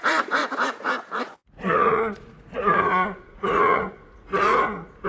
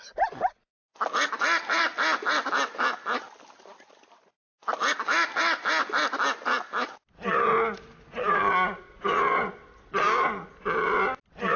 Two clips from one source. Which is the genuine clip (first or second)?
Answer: second